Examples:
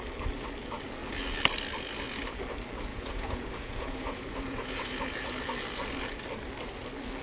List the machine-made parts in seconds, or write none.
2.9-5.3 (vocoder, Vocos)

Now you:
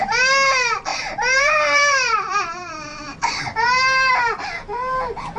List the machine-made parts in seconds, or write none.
0.9-4.1 (vocoder, BigVGAN v2)

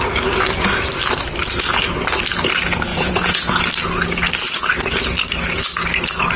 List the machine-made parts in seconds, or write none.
2.9-3.6 (vocoder, Vocos)

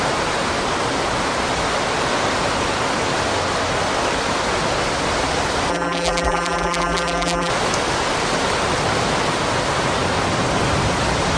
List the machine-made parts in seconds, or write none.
5.7-7.5 (vocoder, BigVGAN v2)

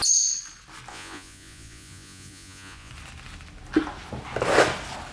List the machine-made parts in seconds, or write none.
0.9-2.9 (vocoder, Vocos)